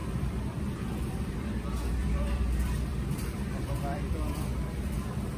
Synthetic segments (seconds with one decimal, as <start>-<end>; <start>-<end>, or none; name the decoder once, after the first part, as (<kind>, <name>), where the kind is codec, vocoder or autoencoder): 0.0-1.3 (vocoder, BigVGAN v2); 2.0-5.4